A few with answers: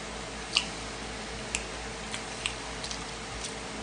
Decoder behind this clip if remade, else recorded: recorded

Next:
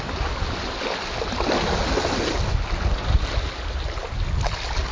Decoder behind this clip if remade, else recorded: recorded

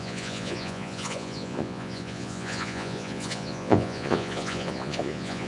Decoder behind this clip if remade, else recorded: remade, vocoder, Vocos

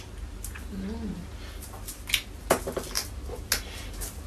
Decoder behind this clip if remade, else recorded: recorded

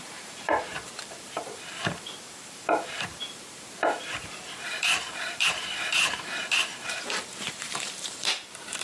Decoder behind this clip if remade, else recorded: remade, vocoder, BigVGAN v2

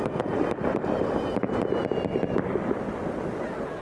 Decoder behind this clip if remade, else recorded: recorded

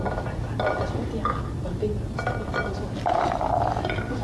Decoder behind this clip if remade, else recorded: recorded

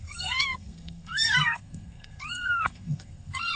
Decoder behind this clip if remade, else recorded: remade, codec, SNAC